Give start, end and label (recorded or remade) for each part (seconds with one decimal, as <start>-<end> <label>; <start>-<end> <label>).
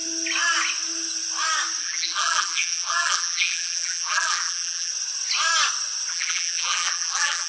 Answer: 0.0-1.8 recorded; 1.8-4.9 remade; 4.9-6.1 recorded; 6.1-7.5 remade